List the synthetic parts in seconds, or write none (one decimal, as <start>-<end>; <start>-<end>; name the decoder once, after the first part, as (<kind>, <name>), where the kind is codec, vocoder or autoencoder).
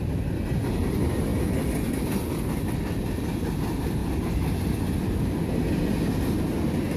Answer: none